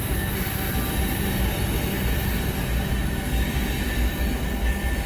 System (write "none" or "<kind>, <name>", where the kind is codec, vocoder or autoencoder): none